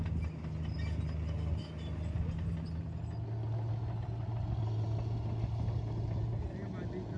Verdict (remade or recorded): recorded